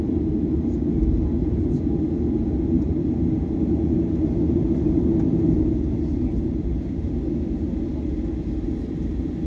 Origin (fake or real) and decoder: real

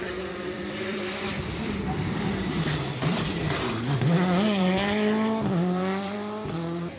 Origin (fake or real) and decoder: fake, vocoder, BigVGAN v2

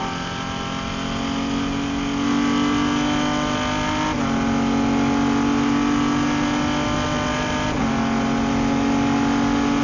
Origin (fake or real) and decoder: real